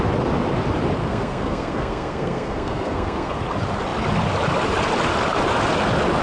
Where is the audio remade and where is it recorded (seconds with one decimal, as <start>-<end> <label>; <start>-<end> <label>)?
0.0-1.0 recorded; 1.0-3.4 remade; 3.4-6.2 recorded